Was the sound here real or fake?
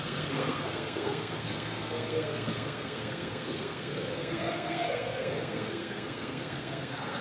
fake